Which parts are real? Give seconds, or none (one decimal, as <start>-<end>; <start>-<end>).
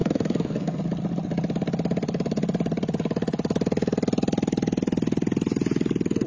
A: 0.8-6.3